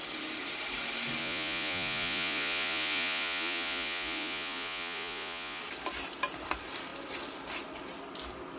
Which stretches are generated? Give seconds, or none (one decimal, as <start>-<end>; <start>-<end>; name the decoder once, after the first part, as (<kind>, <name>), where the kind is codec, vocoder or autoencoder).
1.2-5.6 (vocoder, Vocos)